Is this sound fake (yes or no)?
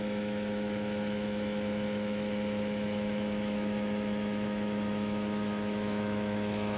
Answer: yes